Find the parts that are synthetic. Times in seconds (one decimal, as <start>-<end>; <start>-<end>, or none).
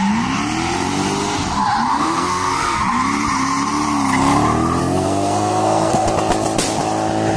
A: 1.9-2.8; 4.8-6.1